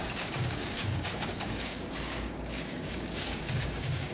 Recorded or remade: remade